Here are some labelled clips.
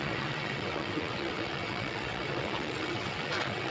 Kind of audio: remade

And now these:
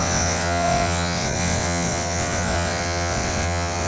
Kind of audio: remade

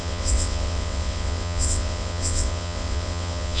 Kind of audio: remade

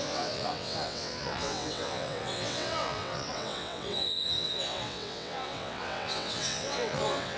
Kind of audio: remade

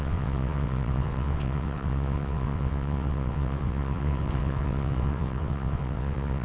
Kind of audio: remade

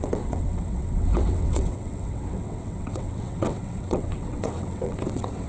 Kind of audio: remade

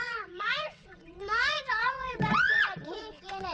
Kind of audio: remade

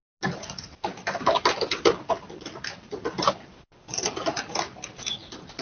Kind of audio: recorded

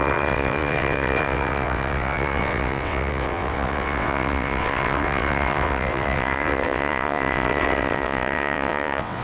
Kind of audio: remade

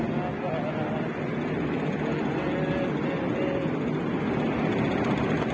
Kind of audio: recorded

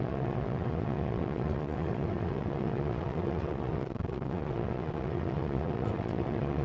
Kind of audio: remade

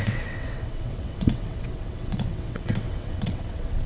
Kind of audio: remade